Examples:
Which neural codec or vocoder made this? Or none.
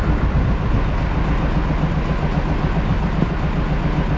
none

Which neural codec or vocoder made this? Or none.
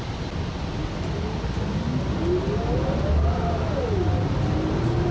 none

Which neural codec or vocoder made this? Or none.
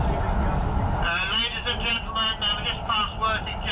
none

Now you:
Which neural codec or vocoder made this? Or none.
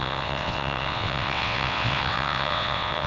vocoder, WaveNeXt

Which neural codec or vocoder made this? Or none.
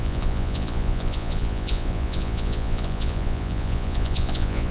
vocoder, Vocos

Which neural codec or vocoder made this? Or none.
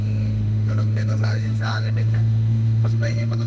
autoencoder, DAC-VAE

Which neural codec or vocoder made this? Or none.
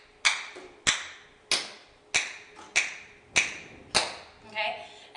none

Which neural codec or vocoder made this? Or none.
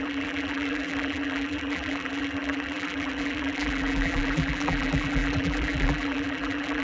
vocoder, BigVGAN v2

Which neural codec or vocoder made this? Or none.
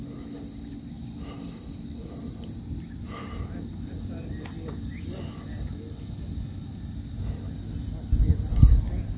none